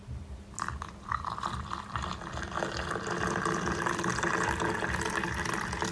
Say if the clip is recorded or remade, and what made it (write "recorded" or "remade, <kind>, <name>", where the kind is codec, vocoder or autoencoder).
recorded